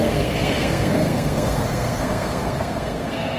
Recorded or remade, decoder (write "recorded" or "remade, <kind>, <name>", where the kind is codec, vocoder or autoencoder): remade, codec, SNAC